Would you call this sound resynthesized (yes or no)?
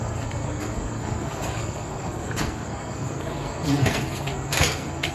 yes